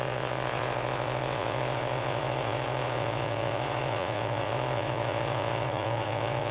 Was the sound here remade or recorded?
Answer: remade